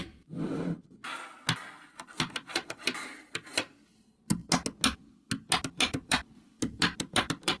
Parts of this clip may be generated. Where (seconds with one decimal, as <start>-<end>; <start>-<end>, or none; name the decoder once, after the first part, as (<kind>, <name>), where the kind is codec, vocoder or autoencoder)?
0.0-4.4 (vocoder, BigVGAN v2); 5.6-7.6